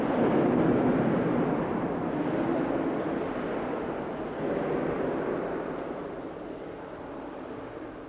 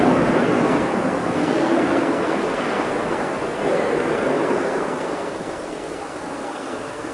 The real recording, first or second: first